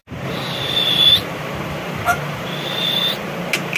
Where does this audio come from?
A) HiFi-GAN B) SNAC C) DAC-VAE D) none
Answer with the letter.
D